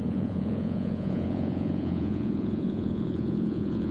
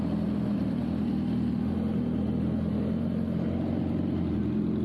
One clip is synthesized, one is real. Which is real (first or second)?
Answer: second